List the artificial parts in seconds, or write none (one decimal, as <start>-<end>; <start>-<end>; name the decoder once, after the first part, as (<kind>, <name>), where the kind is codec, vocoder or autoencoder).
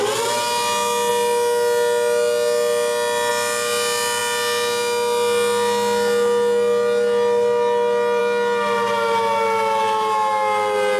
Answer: none